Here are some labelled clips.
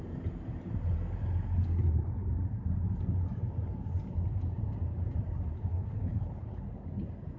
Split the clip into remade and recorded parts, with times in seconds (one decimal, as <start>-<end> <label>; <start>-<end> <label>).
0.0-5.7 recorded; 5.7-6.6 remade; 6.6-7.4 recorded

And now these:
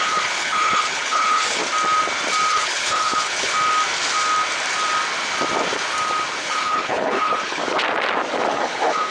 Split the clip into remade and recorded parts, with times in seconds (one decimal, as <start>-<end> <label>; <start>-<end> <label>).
0.0-1.6 remade; 1.6-2.5 recorded; 2.5-3.5 remade; 3.5-6.4 recorded; 6.4-7.6 remade; 7.6-8.5 recorded; 8.5-9.1 remade

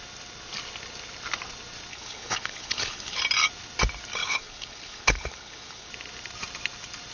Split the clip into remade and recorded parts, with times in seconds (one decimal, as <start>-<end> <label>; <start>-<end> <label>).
0.0-1.9 recorded; 1.9-3.2 remade; 3.2-4.2 recorded; 4.2-5.9 remade; 5.9-7.1 recorded

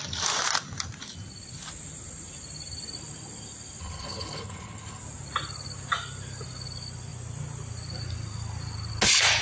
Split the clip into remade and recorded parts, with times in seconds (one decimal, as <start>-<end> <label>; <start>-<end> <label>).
0.0-3.8 recorded; 3.8-5.0 remade; 5.0-9.4 recorded

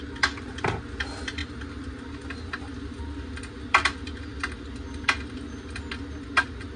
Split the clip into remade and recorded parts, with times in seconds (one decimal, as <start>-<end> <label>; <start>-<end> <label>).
0.0-6.8 recorded